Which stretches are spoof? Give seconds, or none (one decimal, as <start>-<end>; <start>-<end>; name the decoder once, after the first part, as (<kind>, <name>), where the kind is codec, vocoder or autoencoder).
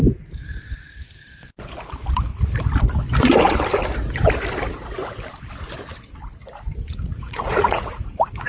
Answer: 6.4-8.5 (vocoder, Vocos)